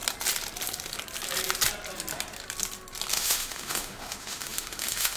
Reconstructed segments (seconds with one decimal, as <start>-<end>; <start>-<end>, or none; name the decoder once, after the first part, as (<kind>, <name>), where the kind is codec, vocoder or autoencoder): 3.1-5.2 (autoencoder, DAC-VAE)